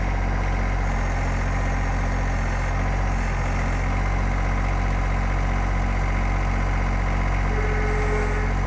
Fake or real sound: real